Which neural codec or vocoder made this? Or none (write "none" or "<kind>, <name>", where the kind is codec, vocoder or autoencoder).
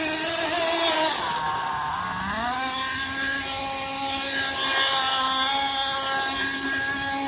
none